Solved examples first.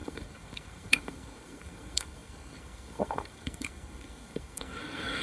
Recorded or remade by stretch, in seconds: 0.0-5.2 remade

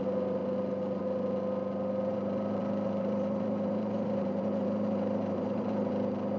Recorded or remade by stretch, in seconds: 0.0-2.1 recorded; 2.1-5.9 remade; 5.9-6.4 recorded

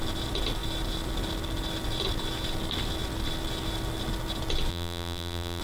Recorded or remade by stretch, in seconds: 0.0-4.7 recorded; 4.7-5.6 remade

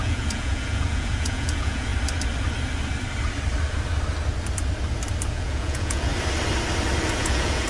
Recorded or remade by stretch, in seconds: 0.0-1.9 remade; 1.9-5.3 recorded; 5.3-6.1 remade; 6.1-7.2 recorded; 7.2-7.7 remade

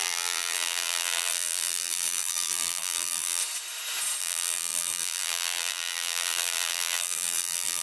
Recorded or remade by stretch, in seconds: 0.0-3.4 remade; 3.4-4.2 recorded; 4.2-7.8 remade

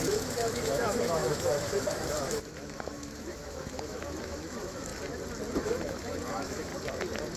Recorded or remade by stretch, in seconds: 0.0-4.9 remade; 4.9-5.6 recorded; 5.6-6.7 remade; 6.7-7.4 recorded